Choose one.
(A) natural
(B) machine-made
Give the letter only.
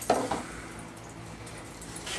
A